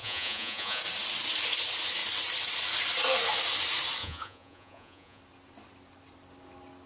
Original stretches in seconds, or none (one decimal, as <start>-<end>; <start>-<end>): 0.8-4.0; 5.2-6.9